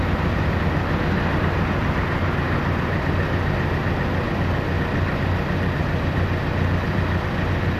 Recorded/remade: recorded